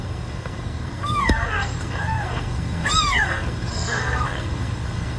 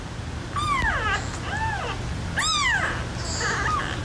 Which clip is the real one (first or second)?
second